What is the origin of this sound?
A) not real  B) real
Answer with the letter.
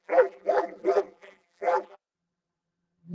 A